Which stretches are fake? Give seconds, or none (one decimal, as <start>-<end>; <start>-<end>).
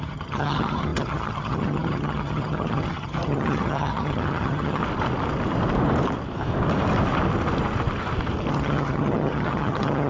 0.0-4.8; 8.5-10.1